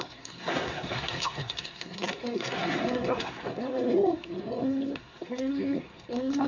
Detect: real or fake fake